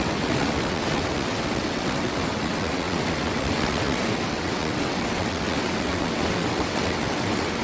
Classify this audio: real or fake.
fake